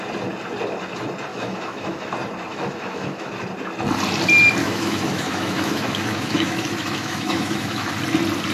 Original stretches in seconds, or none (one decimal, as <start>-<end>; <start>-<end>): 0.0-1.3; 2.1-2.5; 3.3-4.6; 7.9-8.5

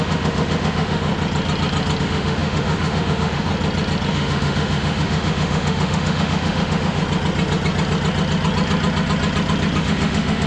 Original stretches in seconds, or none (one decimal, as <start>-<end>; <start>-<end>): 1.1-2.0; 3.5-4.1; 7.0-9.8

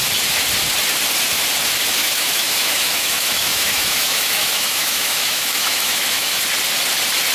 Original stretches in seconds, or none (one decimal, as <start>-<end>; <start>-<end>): 0.0-2.0; 6.4-7.3

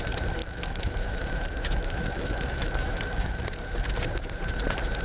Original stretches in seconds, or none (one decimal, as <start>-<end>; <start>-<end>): 0.0-0.4; 3.4-5.0